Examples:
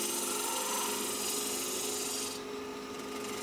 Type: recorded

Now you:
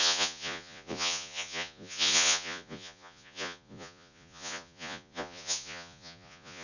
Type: remade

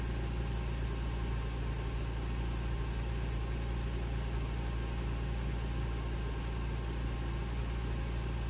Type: recorded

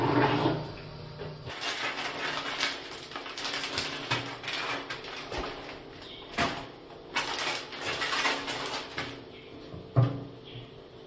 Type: recorded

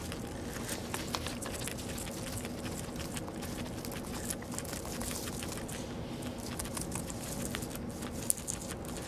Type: recorded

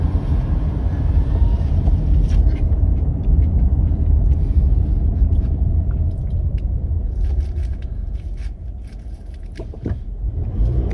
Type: remade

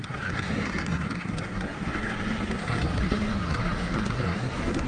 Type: remade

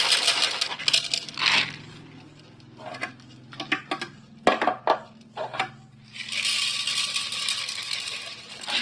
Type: recorded